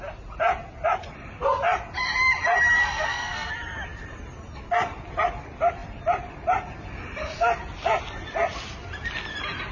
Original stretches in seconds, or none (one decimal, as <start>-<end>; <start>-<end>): 0.0-2.8; 3.5-9.7